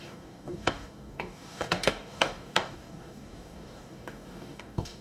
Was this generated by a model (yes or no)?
yes